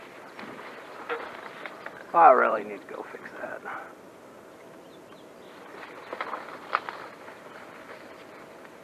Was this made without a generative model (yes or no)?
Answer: yes